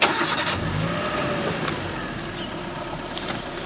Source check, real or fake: real